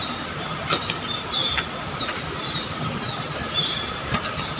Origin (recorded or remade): recorded